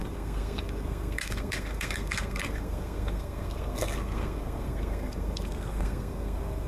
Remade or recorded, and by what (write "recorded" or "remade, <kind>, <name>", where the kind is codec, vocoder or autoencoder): remade, codec, SNAC